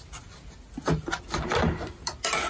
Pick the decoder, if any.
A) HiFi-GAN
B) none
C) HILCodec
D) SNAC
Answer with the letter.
B